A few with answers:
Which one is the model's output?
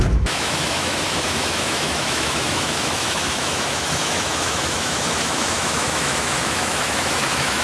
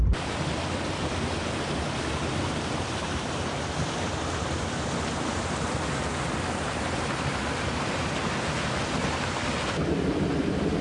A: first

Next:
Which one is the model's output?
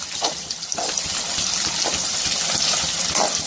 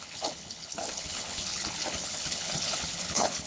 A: second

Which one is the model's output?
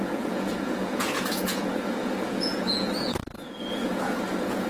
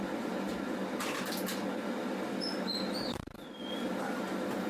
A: first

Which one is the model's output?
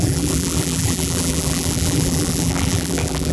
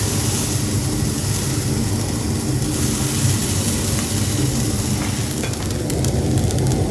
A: first